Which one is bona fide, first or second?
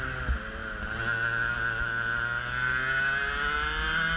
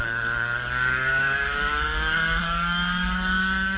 first